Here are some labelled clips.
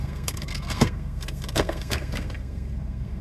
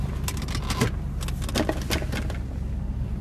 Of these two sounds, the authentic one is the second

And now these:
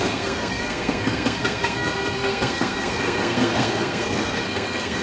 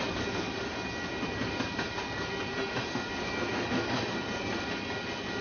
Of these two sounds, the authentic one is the second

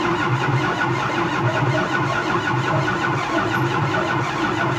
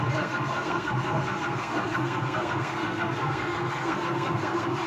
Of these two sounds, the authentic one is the first